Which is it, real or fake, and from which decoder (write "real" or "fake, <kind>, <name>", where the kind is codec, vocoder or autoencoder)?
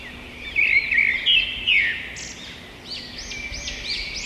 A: real